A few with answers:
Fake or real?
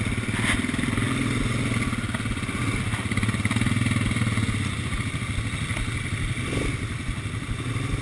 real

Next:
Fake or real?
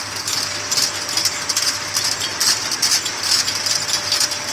real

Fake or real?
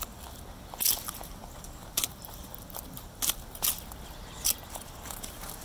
real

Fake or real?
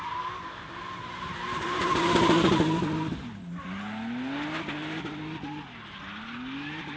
real